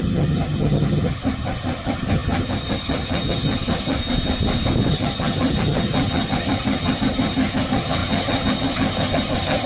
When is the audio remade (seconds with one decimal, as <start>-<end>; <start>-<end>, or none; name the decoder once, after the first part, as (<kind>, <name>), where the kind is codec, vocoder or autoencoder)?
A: 0.0-4.0 (vocoder, HiFi-GAN); 4.9-9.7